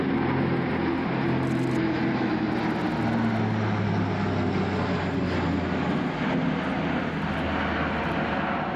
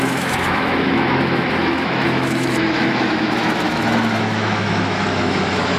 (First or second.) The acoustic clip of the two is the first